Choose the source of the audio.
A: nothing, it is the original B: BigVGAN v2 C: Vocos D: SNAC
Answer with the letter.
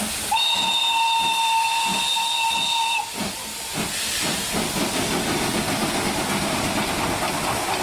A